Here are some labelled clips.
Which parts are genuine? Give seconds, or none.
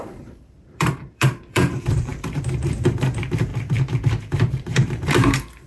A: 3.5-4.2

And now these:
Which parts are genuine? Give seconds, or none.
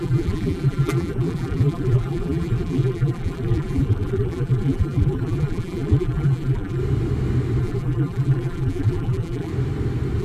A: 6.8-7.6; 9.5-10.2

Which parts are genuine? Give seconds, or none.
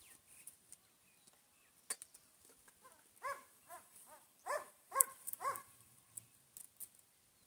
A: 0.0-3.4; 6.0-7.5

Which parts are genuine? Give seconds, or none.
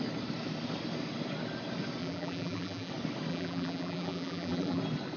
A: 0.0-2.0; 2.9-3.3; 4.8-5.2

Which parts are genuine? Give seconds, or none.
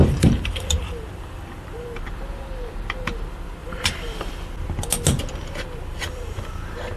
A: 2.1-3.6; 4.3-5.9; 6.5-7.0